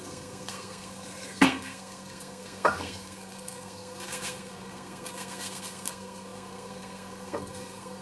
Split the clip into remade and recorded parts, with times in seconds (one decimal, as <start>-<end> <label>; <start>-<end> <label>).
0.0-8.0 remade